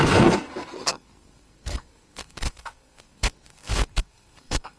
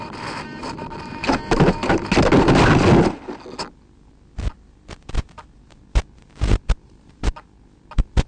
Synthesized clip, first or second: first